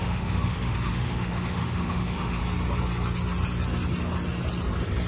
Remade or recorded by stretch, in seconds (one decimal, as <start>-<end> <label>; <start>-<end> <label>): 0.0-2.4 remade; 2.4-5.1 recorded